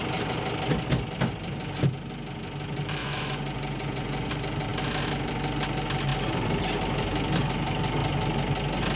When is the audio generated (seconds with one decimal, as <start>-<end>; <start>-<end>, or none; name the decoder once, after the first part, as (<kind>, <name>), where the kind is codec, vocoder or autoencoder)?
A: 3.0-4.3 (vocoder, Vocos)